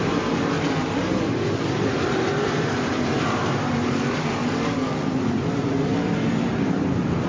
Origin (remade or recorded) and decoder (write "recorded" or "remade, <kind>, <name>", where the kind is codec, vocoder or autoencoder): remade, vocoder, BigVGAN v2